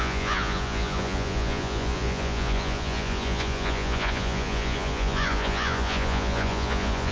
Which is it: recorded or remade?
remade